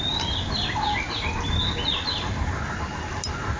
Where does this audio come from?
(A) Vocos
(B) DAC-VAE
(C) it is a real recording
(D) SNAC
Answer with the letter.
C